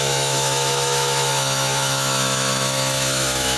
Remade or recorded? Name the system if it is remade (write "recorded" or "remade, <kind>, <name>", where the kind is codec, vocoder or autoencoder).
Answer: remade, autoencoder, DAC-VAE